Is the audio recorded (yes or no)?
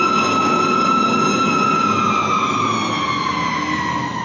yes